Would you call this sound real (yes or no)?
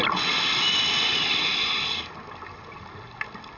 yes